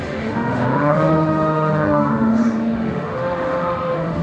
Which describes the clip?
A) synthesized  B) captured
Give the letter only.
A